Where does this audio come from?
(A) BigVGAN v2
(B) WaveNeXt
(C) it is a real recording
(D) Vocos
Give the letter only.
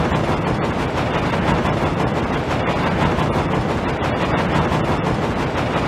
C